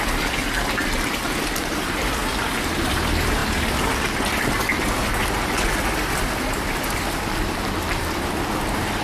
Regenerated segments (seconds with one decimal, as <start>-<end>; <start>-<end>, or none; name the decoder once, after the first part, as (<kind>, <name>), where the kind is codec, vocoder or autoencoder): 0.0-0.4 (vocoder, BigVGAN v2); 1.4-2.2; 3.0-3.4; 6.2-9.0